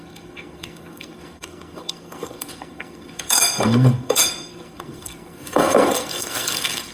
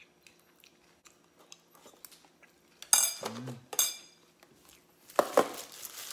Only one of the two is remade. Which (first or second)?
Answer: first